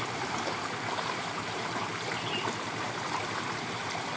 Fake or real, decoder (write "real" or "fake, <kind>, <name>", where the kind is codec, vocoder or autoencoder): fake, vocoder, BigVGAN v2